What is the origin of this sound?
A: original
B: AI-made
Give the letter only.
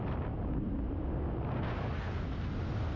A